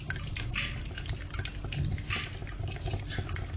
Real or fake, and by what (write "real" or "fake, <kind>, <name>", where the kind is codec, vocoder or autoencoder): real